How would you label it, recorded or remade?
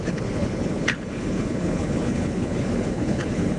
remade